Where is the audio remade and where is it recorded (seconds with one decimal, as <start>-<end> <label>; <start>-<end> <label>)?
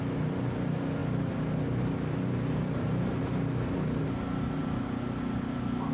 0.0-5.9 recorded